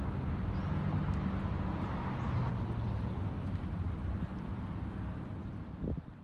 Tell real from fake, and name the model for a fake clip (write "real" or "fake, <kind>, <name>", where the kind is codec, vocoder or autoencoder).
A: real